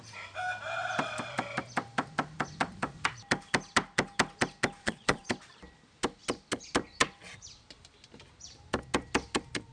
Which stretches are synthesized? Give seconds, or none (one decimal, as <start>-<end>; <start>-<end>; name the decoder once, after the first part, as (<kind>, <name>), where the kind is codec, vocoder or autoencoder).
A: 4.8-5.3 (vocoder, Vocos)